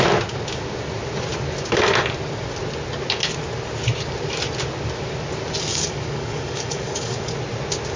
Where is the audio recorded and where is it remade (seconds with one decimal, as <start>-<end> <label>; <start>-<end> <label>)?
0.0-5.7 recorded; 5.7-7.3 remade; 7.3-8.0 recorded